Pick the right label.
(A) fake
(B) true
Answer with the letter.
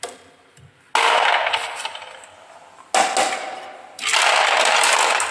B